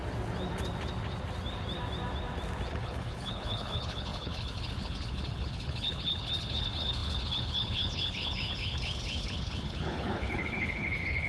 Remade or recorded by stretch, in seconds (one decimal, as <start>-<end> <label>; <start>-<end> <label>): 0.0-2.7 recorded; 2.7-11.3 remade

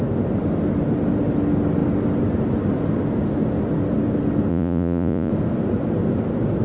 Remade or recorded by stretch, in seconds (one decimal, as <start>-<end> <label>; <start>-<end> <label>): 0.0-4.5 recorded; 4.5-5.3 remade; 5.3-6.6 recorded

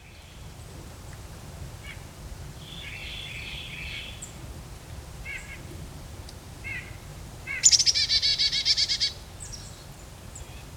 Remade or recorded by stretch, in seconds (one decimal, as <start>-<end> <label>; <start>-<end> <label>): 0.0-7.1 recorded; 7.1-7.8 remade; 7.8-10.8 recorded

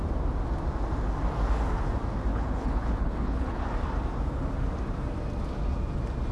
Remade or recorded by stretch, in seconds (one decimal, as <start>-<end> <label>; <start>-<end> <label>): 0.0-2.3 recorded; 2.3-3.6 remade; 3.6-6.3 recorded

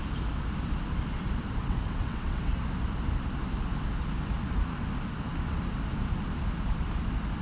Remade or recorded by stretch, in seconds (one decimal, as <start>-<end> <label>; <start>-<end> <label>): 0.0-1.6 recorded; 1.6-2.6 remade; 2.6-7.4 recorded

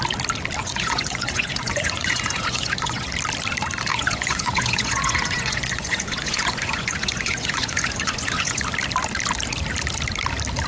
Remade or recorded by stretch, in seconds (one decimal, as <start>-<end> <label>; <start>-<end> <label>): 0.0-0.6 recorded; 0.6-3.1 remade; 3.1-3.9 recorded; 3.9-8.6 remade; 8.6-10.7 recorded

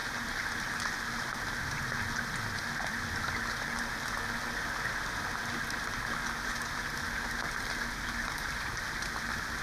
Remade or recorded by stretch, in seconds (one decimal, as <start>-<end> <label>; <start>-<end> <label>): 0.0-9.6 recorded

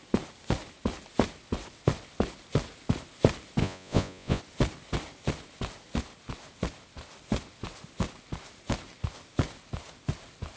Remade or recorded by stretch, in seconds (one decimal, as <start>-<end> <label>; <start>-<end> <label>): 0.0-3.6 recorded; 3.6-4.4 remade; 4.4-10.6 recorded